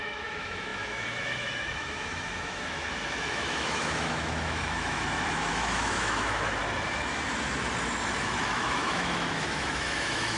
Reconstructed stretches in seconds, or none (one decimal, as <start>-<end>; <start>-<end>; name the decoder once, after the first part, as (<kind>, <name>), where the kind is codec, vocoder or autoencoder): 0.0-6.6 (autoencoder, DAC-VAE); 8.2-10.4